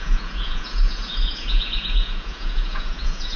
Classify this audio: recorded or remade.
remade